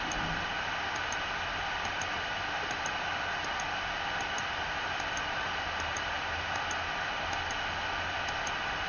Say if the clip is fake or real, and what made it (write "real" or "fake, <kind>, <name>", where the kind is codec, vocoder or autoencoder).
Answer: real